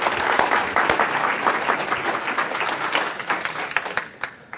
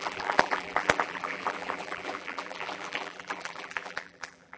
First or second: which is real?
first